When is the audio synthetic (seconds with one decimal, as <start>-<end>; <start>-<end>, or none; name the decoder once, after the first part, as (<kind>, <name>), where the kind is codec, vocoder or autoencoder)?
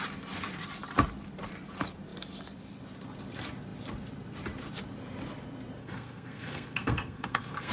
5.8-7.7 (codec, SNAC)